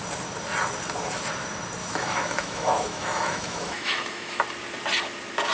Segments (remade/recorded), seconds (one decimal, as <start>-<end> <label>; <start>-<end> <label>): 0.0-1.8 recorded; 1.8-4.4 remade; 4.4-5.5 recorded